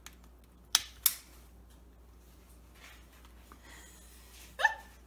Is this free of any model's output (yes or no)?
yes